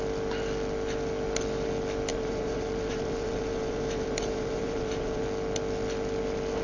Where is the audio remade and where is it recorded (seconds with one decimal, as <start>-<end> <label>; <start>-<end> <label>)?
0.0-2.1 recorded; 2.1-5.2 remade; 5.2-6.6 recorded